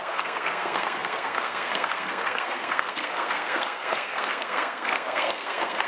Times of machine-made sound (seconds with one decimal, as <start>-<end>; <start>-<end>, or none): 0.0-5.9